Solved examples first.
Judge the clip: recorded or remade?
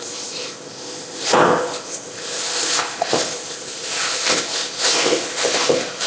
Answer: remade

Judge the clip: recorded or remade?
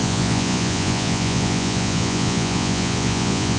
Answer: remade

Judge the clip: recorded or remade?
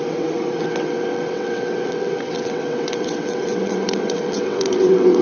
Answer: remade